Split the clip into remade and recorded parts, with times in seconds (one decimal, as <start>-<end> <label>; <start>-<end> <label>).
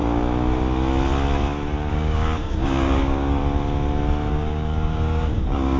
0.0-1.9 recorded; 1.9-3.4 remade; 3.4-4.3 recorded; 4.3-5.8 remade